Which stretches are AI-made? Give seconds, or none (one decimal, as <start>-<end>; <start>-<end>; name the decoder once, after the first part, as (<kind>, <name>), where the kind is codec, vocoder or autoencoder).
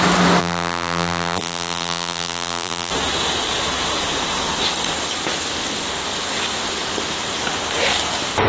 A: 0.4-2.9 (vocoder, BigVGAN v2)